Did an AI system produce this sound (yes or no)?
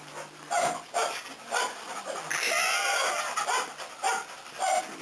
yes